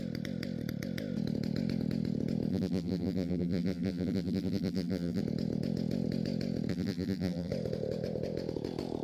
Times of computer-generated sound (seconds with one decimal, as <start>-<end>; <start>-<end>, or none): 2.5-5.2; 6.7-7.5